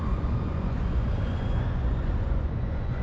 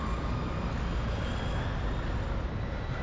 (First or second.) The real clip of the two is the second